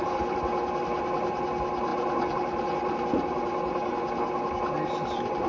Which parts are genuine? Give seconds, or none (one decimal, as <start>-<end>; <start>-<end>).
0.0-5.5